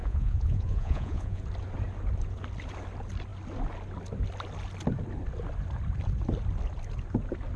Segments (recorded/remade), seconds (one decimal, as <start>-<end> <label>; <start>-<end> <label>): 0.0-1.4 remade; 1.4-7.6 recorded